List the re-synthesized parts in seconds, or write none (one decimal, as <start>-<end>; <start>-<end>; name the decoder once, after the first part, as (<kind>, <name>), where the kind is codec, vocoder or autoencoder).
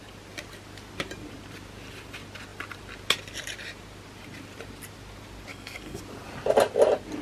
5.5-6.0 (codec, DAC)